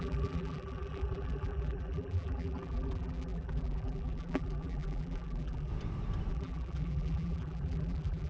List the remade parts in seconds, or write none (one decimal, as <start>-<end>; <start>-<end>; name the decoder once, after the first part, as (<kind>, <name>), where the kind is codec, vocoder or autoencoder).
0.0-5.7 (vocoder, BigVGAN v2); 6.3-8.3